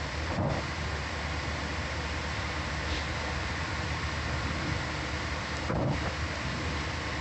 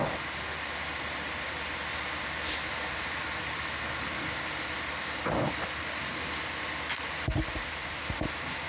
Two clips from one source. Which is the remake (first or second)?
first